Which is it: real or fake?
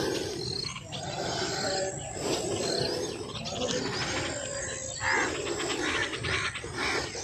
real